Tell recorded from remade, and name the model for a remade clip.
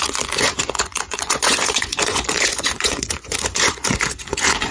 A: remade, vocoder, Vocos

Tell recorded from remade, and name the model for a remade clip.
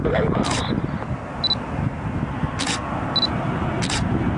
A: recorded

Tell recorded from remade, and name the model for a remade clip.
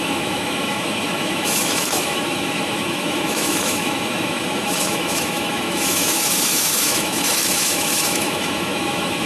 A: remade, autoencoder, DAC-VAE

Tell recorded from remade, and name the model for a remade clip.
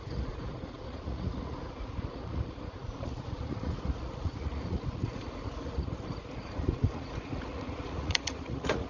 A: remade, vocoder, Vocos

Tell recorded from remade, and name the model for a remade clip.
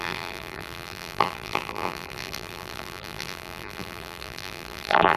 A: remade, vocoder, BigVGAN v2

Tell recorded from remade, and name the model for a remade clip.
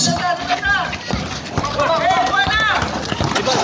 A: recorded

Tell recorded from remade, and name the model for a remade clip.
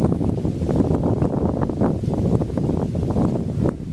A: recorded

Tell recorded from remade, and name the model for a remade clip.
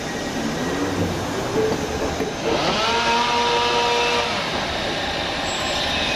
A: recorded